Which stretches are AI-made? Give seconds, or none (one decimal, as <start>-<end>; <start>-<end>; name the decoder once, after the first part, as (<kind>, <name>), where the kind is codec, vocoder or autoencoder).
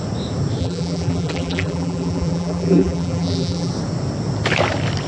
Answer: 0.6-3.7 (vocoder, BigVGAN v2)